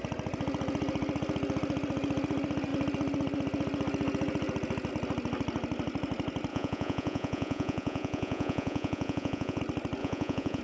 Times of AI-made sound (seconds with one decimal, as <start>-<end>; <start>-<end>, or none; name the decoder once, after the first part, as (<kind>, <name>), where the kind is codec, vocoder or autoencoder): 6.5-9.6 (vocoder, Vocos); 10.0-10.6